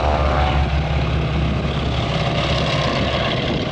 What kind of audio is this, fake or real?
real